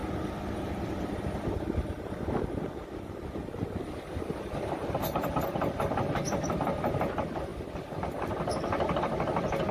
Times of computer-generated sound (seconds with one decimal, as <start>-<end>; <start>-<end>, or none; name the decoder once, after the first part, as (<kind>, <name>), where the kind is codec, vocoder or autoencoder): 0.0-1.1 (vocoder, BigVGAN v2)